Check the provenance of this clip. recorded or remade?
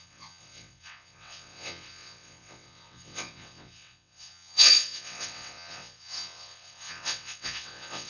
remade